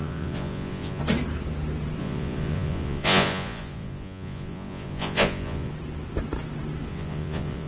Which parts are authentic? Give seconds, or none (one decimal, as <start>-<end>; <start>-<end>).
1.0-2.0; 5.7-6.9